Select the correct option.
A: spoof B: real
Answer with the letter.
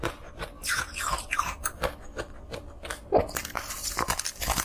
B